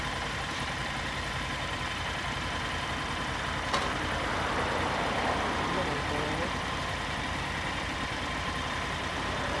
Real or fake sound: fake